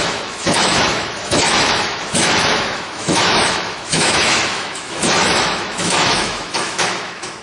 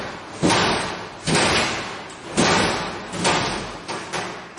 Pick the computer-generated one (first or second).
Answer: first